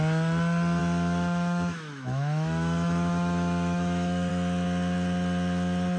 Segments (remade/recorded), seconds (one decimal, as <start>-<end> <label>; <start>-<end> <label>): 0.0-0.8 recorded; 0.8-4.3 remade; 4.3-6.0 recorded